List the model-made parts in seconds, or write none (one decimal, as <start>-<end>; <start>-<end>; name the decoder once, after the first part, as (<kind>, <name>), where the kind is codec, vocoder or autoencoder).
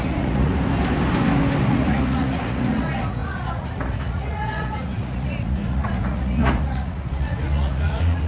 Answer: 0.0-0.5 (vocoder, Vocos); 1.7-8.3